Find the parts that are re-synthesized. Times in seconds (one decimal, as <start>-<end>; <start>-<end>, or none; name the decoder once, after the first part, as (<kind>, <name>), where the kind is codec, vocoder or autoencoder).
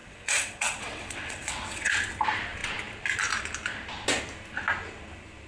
0.0-1.9 (vocoder, WaveNeXt)